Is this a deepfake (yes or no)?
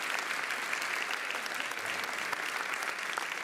no